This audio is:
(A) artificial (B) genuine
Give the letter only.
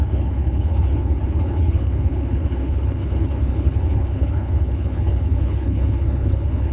A